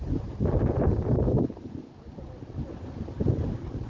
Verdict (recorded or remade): recorded